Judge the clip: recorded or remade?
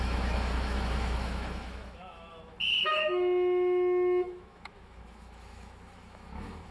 remade